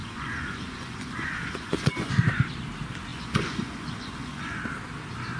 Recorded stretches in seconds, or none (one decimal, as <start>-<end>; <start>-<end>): 2.1-3.1; 4.6-5.4